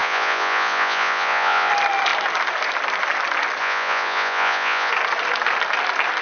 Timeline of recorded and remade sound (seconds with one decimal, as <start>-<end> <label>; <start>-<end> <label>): 0.0-1.7 remade; 1.7-3.6 recorded; 3.6-4.9 remade; 4.9-6.2 recorded